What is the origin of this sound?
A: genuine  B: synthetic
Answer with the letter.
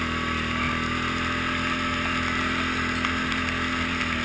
A